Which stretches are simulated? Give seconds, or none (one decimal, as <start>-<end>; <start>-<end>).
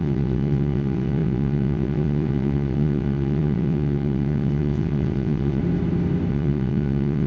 0.0-5.6; 6.3-7.3